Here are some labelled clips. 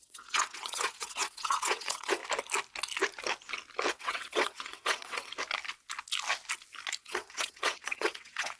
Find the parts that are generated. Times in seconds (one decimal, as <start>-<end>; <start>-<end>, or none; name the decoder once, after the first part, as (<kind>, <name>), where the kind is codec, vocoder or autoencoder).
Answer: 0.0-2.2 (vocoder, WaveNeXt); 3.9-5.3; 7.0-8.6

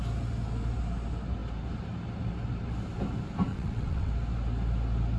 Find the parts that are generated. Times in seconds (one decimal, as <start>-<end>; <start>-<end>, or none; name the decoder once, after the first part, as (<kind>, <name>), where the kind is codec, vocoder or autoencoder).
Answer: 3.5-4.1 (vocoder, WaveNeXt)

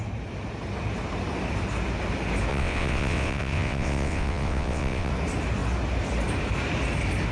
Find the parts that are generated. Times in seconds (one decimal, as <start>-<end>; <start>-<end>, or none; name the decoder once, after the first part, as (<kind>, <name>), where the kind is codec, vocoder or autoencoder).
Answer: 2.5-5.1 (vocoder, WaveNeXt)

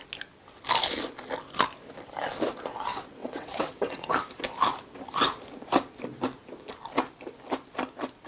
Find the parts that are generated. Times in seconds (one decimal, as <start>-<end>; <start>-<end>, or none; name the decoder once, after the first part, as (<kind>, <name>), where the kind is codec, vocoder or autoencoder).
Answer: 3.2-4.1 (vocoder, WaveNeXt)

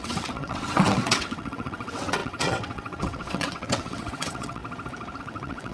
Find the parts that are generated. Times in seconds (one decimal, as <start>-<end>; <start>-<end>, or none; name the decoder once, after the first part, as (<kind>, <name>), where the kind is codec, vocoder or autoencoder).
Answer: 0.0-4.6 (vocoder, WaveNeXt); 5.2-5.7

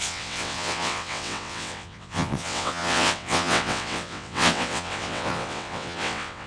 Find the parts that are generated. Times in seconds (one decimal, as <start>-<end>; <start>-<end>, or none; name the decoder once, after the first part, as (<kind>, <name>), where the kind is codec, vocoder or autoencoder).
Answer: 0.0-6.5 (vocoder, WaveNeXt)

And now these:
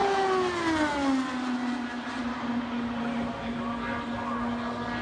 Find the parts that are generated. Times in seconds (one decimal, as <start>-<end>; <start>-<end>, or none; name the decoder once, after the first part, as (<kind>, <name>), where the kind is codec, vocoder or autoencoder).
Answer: none